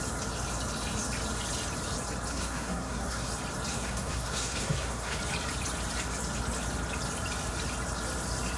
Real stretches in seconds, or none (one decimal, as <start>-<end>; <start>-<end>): 0.0-2.3; 3.3-3.7; 5.2-8.6